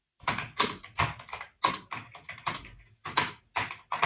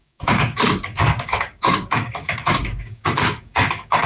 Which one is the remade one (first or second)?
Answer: second